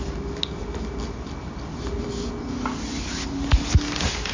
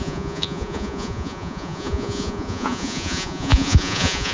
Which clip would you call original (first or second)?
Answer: first